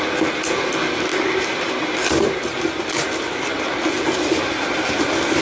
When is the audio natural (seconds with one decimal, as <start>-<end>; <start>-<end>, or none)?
0.0-5.4

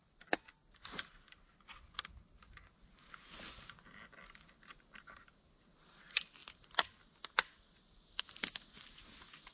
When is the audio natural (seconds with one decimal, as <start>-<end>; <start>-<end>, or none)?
0.0-9.5

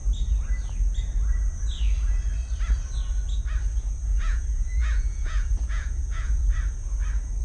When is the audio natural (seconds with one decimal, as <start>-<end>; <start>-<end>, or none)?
0.0-4.1; 6.4-7.4

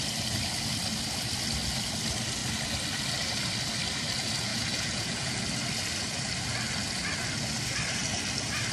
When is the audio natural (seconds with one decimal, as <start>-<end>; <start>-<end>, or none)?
0.0-4.5; 5.4-8.7

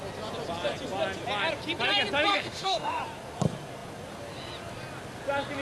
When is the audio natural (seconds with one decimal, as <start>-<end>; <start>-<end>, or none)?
0.0-2.3; 3.0-5.6